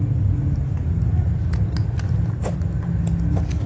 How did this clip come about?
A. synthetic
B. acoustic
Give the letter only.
B